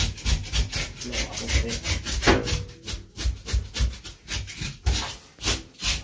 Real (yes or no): yes